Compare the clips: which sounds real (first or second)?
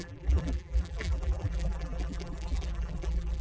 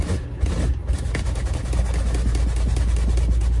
second